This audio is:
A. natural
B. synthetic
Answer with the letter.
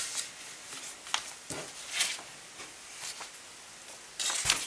A